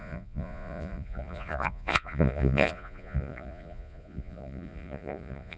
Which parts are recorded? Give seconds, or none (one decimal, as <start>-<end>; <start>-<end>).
none